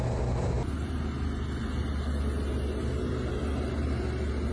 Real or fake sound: real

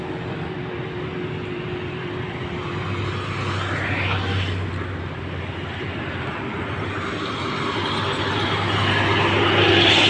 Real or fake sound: real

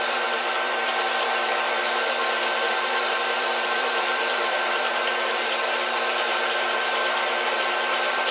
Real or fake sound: fake